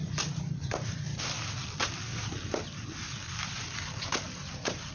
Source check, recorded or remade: remade